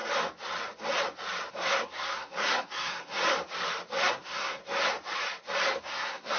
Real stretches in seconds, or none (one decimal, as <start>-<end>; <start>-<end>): 0.0-1.5; 3.2-4.1; 4.6-5.8